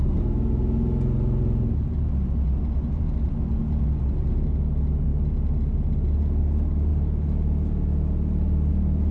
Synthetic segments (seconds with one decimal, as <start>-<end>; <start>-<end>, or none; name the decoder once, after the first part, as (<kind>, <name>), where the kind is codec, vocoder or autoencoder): none